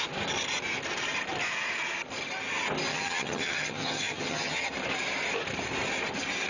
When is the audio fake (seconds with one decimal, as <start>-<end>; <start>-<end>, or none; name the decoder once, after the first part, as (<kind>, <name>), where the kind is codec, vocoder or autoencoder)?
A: 2.9-4.7 (vocoder, HiFi-GAN)